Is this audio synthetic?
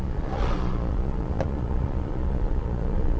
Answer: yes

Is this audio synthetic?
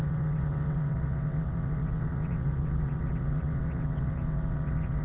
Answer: yes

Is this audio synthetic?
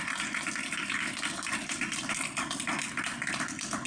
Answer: no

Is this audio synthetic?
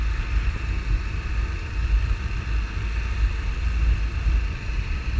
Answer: no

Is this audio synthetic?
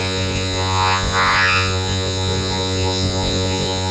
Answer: yes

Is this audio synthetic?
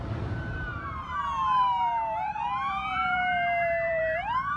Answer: yes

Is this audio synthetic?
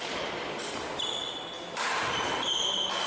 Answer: no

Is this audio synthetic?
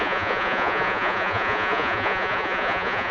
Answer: yes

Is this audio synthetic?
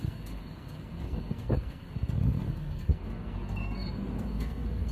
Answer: yes